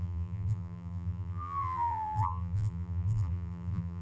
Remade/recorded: remade